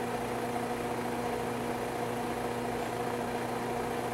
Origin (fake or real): real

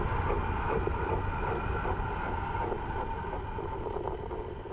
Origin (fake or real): real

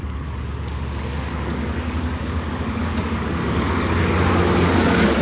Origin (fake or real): fake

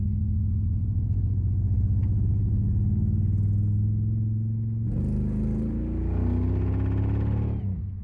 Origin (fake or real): real